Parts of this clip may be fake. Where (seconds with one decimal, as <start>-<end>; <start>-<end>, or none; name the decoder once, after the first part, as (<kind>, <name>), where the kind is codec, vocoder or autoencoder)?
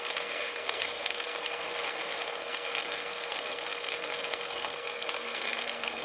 0.0-6.0 (codec, SNAC)